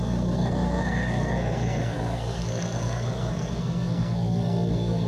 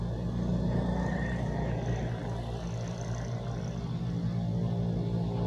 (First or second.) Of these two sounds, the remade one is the first